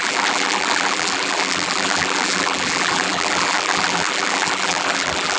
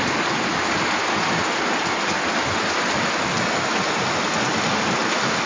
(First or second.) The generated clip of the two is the first